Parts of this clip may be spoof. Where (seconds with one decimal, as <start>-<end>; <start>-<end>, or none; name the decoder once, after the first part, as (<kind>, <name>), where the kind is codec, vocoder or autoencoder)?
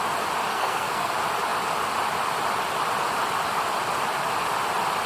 0.5-1.1 (codec, SNAC)